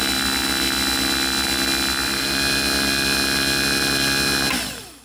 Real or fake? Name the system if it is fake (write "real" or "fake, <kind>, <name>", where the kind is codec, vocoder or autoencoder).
real